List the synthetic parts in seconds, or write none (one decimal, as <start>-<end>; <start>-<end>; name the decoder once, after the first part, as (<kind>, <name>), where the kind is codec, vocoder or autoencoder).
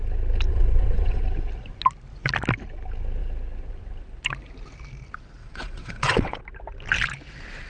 0.5-1.2 (vocoder, WaveNeXt); 5.4-6.4